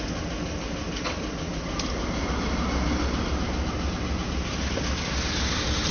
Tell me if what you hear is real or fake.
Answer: real